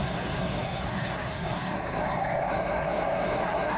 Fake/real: fake